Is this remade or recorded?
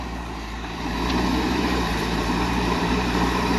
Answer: remade